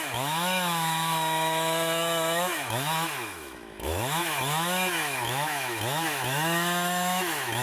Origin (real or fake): fake